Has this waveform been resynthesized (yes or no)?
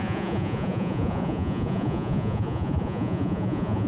yes